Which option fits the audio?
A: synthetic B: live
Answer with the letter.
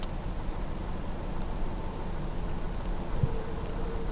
B